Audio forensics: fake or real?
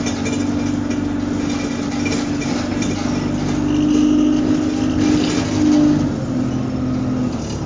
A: real